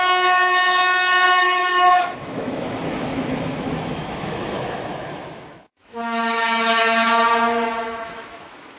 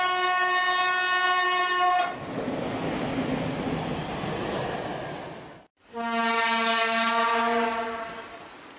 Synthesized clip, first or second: first